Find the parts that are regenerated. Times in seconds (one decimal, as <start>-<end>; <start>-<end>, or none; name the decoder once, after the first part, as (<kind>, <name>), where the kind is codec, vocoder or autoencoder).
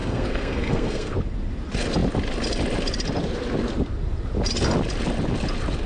0.0-1.1 (codec, SNAC)